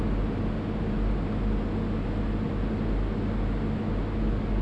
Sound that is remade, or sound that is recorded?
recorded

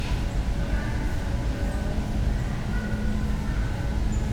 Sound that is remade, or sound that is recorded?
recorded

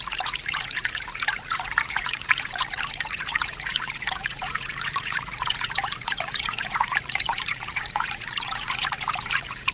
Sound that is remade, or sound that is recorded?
remade